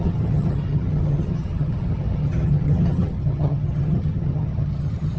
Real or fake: fake